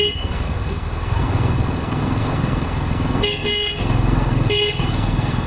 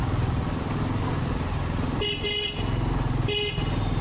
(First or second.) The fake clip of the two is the first